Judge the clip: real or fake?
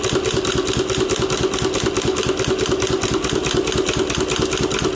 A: real